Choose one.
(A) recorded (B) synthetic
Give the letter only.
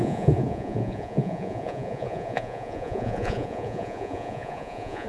B